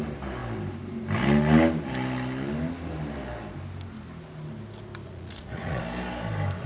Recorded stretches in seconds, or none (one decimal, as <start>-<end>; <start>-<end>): 0.0-5.0; 5.8-6.7